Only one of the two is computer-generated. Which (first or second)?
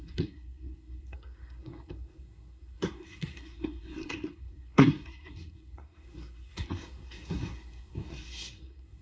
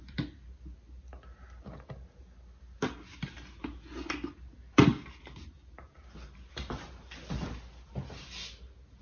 first